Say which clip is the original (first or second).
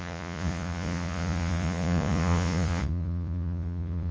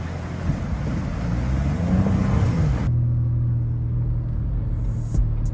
second